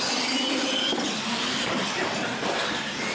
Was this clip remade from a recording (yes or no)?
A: no